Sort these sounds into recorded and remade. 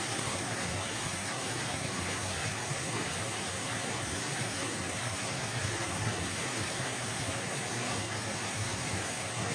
remade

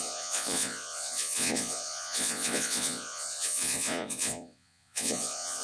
remade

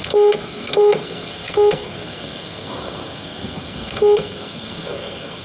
remade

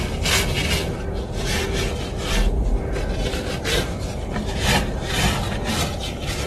recorded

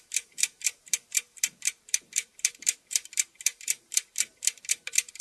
remade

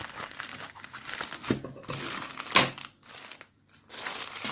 recorded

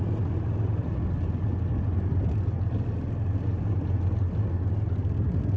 recorded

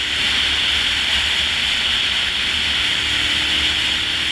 recorded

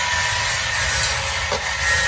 recorded